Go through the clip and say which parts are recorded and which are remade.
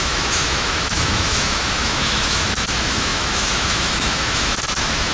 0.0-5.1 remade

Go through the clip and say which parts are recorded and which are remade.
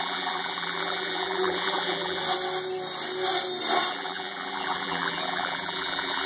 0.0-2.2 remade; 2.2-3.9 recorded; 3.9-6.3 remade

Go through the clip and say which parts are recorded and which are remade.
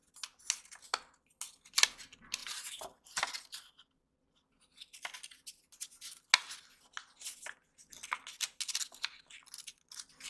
0.0-2.4 recorded; 2.4-3.2 remade; 3.2-10.3 recorded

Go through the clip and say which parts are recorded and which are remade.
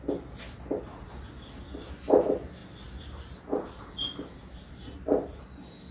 0.0-5.9 recorded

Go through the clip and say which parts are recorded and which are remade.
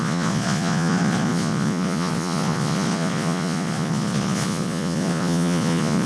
0.0-6.1 remade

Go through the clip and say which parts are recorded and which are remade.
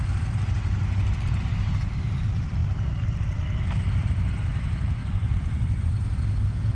0.0-5.0 recorded; 5.0-5.9 remade; 5.9-6.8 recorded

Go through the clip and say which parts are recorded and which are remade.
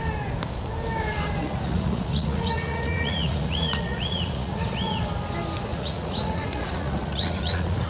0.0-1.4 recorded; 1.4-5.0 remade; 5.0-5.7 recorded; 5.7-7.9 remade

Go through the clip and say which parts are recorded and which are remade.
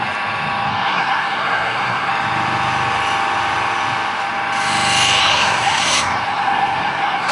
0.0-0.7 recorded; 0.7-2.1 remade; 2.1-5.2 recorded; 5.2-7.3 remade